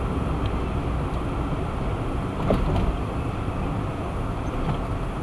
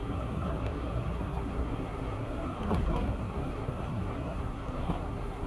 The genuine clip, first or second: first